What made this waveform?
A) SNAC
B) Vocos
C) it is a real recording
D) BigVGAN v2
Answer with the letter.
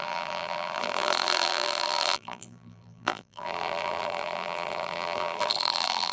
D